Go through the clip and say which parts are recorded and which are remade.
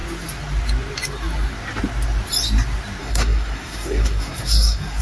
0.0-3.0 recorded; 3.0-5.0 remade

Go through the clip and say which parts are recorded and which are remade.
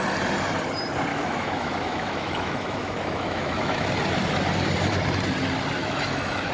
0.0-1.1 recorded; 1.1-3.9 remade; 3.9-5.8 recorded; 5.8-6.5 remade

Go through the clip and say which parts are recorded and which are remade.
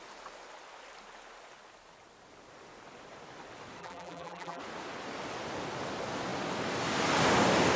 0.0-3.8 recorded; 3.8-4.6 remade; 4.6-7.8 recorded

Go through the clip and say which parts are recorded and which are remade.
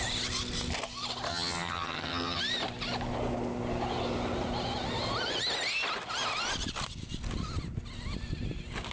0.0-1.3 recorded; 1.3-2.4 remade; 2.4-8.9 recorded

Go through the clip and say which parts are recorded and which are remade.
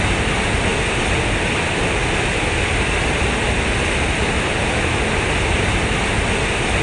0.0-6.8 recorded